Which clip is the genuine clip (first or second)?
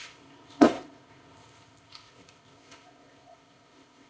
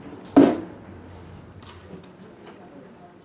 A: second